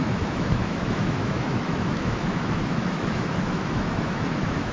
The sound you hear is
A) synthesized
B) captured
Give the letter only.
A